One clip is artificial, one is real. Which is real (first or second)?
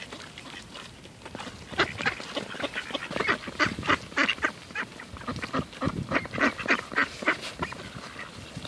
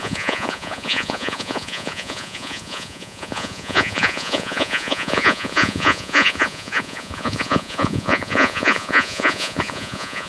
first